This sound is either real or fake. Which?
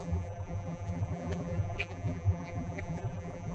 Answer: fake